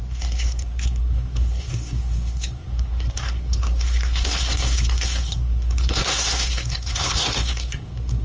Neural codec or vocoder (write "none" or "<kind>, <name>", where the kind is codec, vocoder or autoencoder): codec, SNAC